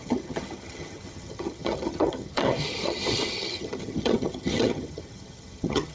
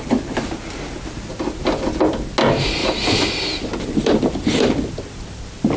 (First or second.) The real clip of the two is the second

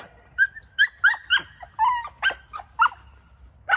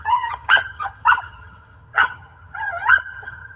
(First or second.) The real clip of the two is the first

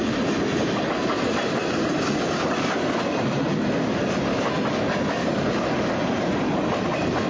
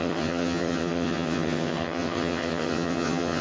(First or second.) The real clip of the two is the first